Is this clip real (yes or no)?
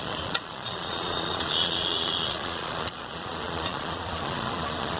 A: no